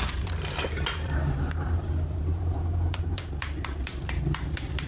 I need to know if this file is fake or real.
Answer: fake